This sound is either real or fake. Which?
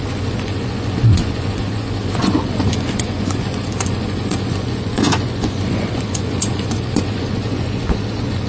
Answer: fake